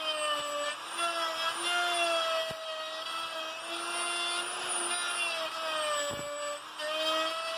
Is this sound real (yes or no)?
yes